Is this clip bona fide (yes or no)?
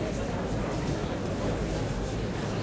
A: yes